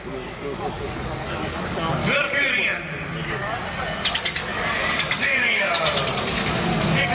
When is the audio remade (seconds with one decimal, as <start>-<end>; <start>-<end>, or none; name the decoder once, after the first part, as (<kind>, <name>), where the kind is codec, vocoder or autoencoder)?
0.0-2.0 (codec, DAC); 4.1-7.1